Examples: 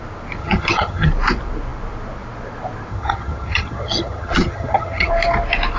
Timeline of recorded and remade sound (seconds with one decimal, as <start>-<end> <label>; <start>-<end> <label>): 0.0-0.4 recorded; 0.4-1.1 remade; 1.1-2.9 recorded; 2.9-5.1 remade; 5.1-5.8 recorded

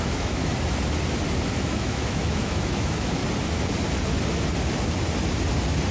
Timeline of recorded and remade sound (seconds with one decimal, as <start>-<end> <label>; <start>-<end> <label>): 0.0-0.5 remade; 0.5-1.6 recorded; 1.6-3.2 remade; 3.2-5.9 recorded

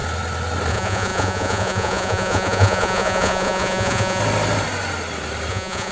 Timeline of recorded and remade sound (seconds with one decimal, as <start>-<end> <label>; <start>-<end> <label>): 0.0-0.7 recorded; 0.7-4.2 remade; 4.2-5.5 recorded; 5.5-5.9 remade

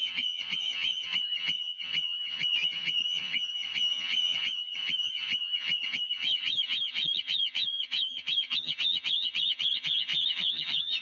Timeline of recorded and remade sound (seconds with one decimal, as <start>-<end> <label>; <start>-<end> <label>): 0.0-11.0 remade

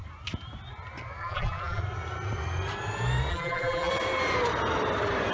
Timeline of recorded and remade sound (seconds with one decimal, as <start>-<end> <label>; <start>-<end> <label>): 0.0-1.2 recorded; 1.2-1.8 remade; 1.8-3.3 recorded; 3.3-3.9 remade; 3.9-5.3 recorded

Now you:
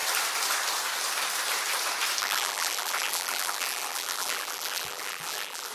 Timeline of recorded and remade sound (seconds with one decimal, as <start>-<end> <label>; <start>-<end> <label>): 0.0-2.2 recorded; 2.2-5.7 remade

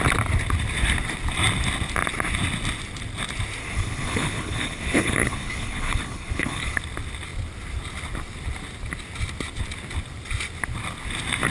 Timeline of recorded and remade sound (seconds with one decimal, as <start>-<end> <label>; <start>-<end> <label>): 0.0-3.6 recorded; 3.6-6.8 remade; 6.8-11.5 recorded

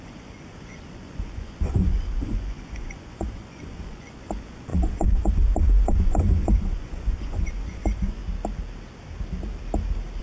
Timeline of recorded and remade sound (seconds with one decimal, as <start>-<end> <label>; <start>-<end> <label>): 0.0-8.2 remade; 8.2-10.2 recorded